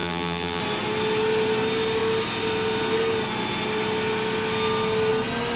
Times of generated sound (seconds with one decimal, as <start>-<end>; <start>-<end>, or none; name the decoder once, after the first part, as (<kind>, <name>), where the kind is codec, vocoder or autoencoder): 0.0-0.6 (vocoder, BigVGAN v2)